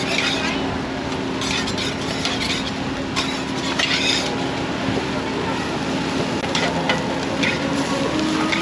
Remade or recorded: recorded